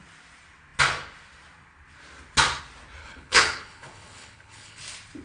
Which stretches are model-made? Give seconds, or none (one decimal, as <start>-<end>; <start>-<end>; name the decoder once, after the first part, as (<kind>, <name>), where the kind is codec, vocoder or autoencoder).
3.0-4.8 (codec, HILCodec)